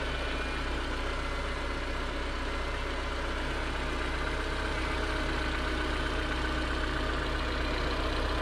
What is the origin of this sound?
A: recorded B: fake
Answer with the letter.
A